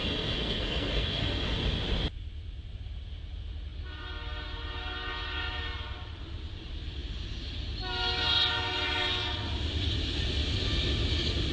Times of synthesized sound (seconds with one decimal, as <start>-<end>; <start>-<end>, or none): 0.0-1.6